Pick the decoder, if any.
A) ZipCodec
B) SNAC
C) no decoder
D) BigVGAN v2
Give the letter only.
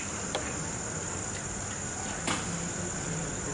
C